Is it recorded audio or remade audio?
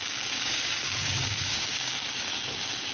remade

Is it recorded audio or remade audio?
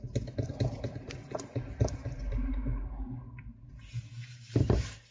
remade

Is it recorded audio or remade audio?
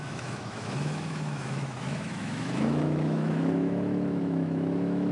remade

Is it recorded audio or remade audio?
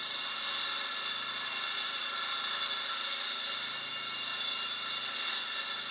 recorded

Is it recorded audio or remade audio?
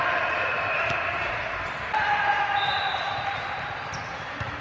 remade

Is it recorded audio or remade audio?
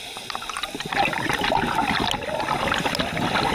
recorded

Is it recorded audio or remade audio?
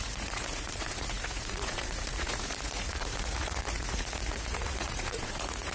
remade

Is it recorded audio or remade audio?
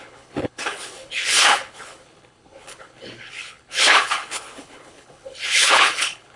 remade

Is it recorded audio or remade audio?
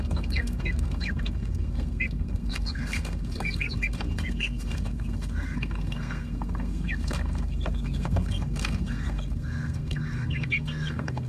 remade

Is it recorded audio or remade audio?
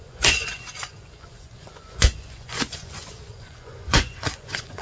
remade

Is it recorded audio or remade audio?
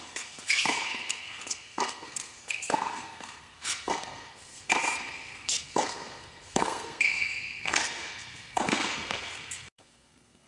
remade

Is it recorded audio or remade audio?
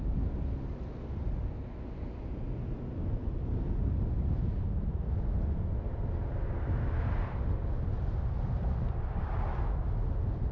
recorded